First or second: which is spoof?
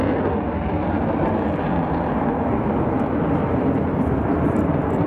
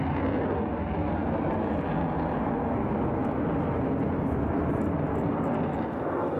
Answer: first